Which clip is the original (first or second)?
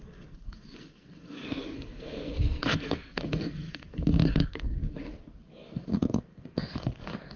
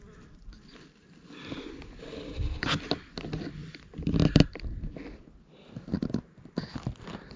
second